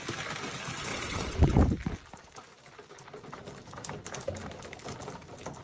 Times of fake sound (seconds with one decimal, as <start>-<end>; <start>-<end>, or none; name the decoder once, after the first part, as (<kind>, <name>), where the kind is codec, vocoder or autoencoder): 0.9-1.6 (vocoder, WaveNeXt)